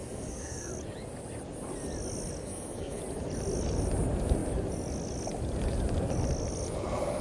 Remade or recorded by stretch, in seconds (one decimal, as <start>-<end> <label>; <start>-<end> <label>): 0.0-0.7 remade; 0.7-2.4 recorded; 2.4-3.0 remade; 3.0-7.2 recorded